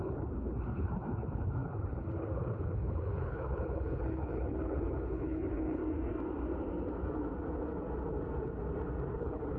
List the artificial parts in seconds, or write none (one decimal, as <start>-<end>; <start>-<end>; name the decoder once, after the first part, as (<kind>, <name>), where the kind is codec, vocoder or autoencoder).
0.0-5.8 (codec, HILCodec); 9.1-9.6